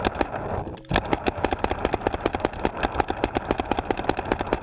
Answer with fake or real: real